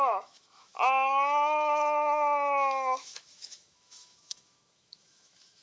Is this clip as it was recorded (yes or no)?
no